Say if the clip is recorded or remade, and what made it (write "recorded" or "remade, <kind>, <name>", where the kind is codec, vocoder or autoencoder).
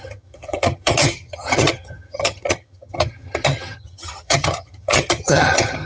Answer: remade, vocoder, HiFi-GAN